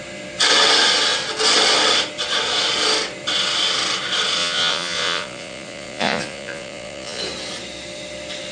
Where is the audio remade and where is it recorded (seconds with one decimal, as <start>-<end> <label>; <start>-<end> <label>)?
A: 0.0-4.4 recorded; 4.4-7.2 remade; 7.2-8.5 recorded